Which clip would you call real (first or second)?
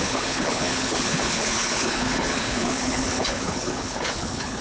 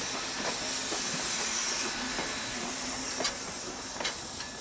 second